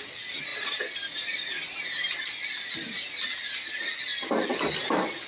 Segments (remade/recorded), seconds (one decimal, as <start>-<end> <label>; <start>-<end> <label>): 0.0-5.3 recorded